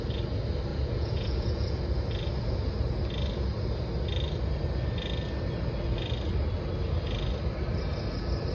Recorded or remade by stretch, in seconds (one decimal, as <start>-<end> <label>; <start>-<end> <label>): 0.0-0.7 recorded; 0.7-1.8 remade; 1.8-8.5 recorded